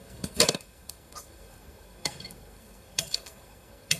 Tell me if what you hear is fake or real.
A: fake